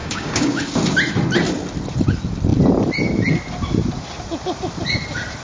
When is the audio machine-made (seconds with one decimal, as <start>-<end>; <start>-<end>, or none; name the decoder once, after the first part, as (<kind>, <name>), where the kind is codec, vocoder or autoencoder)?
0.0-0.6 (codec, DAC)